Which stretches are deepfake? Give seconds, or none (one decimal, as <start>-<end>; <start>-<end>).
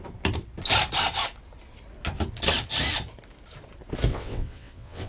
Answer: 4.1-5.1